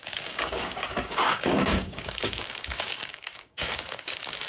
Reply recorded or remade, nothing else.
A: remade